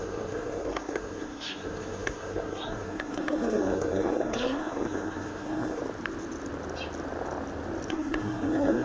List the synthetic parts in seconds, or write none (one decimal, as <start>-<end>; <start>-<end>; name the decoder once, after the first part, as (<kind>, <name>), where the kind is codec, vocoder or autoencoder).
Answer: 0.0-5.8 (codec, SNAC); 7.9-8.8